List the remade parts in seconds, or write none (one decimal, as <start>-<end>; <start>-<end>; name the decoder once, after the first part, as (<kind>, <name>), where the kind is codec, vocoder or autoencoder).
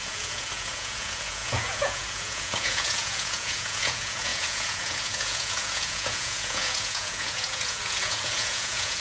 0.0-9.0 (vocoder, Vocos)